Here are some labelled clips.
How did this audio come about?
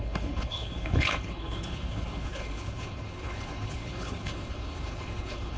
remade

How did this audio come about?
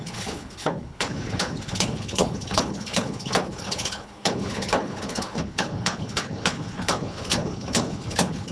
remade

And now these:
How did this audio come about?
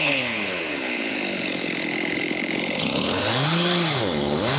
remade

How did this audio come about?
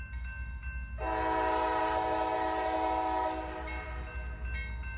recorded